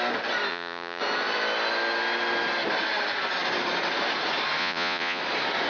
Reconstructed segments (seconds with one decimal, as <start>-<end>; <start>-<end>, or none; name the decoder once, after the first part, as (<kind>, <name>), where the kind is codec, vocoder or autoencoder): 0.5-1.0 (vocoder, Vocos); 4.6-5.2